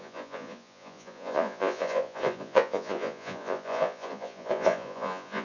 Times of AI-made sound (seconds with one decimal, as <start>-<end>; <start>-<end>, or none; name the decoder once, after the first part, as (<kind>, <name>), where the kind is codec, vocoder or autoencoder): 0.0-5.4 (vocoder, Vocos)